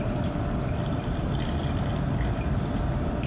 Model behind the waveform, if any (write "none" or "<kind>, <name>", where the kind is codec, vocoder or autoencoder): vocoder, BigVGAN v2